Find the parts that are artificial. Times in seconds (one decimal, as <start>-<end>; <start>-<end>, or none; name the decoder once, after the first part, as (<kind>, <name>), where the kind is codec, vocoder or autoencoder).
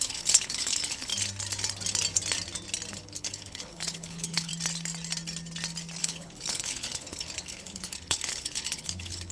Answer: 0.0-1.1 (codec, HILCodec); 2.9-4.5; 6.0-9.3